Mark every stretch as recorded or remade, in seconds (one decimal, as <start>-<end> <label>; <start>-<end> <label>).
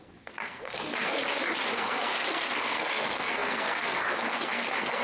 0.0-1.2 remade; 1.2-1.7 recorded; 1.7-5.0 remade